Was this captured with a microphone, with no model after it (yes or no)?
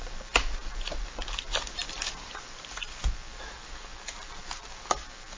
no